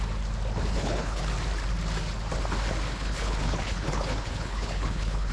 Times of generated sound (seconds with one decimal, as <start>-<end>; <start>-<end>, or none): 0.7-1.2; 2.9-5.3